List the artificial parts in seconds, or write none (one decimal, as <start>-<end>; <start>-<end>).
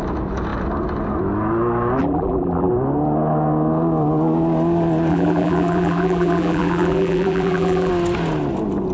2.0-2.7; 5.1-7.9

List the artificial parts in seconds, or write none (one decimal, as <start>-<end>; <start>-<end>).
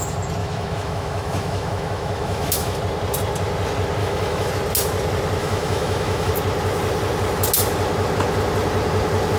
0.4-2.8; 4.0-4.5; 5.4-6.3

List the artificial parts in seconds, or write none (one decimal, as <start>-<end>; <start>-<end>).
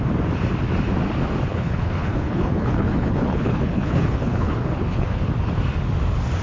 1.5-5.3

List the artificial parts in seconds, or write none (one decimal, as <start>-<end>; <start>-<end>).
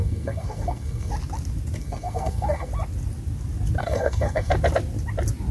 0.0-1.1; 1.8-2.7; 3.8-4.5